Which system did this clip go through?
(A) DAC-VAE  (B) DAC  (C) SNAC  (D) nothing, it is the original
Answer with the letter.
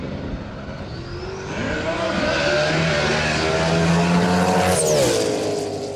D